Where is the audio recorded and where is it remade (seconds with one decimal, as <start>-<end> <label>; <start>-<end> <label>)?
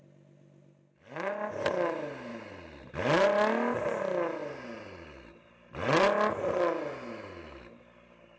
0.0-8.4 recorded